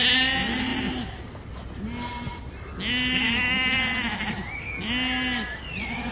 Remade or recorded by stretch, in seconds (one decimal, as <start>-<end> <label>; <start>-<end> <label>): 0.0-6.1 recorded